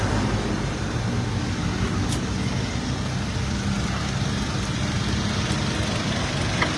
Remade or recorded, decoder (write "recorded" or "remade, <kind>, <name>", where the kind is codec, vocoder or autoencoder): recorded